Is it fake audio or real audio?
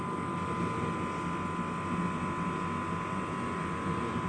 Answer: real